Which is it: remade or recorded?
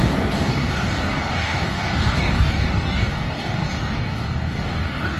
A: remade